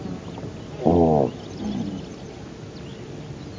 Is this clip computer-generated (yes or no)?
no